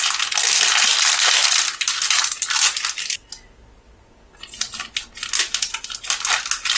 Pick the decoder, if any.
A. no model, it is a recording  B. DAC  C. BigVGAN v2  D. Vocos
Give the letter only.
A